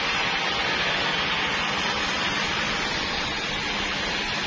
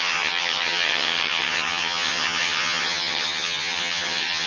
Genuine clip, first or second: first